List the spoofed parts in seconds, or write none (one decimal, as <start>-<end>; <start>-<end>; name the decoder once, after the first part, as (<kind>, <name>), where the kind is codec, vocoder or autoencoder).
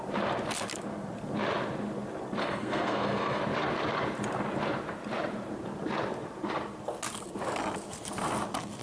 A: 2.4-3.4 (codec, SNAC)